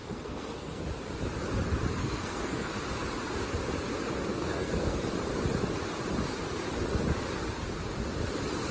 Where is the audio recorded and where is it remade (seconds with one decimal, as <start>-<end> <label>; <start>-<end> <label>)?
0.0-0.8 remade; 0.8-2.0 recorded; 2.0-2.7 remade; 2.7-4.3 recorded; 4.3-5.1 remade; 5.1-8.7 recorded